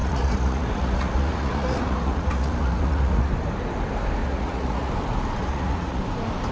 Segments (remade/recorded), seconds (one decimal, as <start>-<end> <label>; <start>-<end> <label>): 0.0-3.3 remade; 3.3-4.2 recorded; 4.2-4.9 remade; 4.9-5.4 recorded; 5.4-6.0 remade; 6.0-6.5 recorded